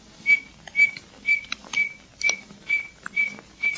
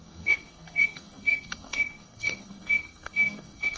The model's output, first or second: second